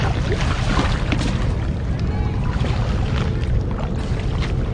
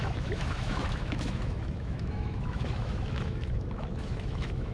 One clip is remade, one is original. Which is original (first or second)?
first